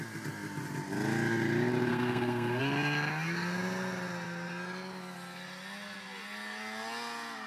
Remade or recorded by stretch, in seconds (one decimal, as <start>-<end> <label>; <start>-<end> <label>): 0.0-1.9 recorded; 1.9-2.6 remade; 2.6-7.5 recorded